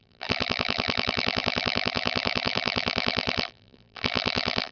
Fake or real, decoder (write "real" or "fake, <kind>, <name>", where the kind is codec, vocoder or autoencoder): fake, vocoder, BigVGAN v2